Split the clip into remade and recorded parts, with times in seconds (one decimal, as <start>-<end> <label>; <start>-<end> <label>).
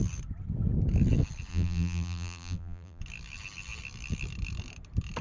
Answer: 0.0-1.5 recorded; 1.5-3.0 remade; 3.0-5.2 recorded